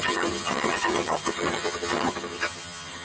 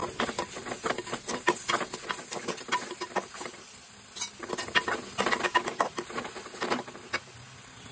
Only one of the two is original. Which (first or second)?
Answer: second